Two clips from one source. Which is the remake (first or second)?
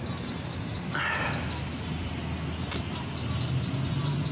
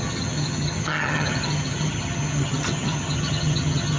second